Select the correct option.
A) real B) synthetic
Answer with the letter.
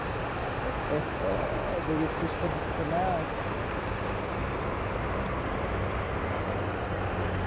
A